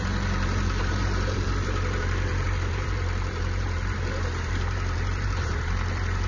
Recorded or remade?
remade